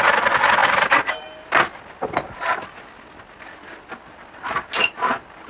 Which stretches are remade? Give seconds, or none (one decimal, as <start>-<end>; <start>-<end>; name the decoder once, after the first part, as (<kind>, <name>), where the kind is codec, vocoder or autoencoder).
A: none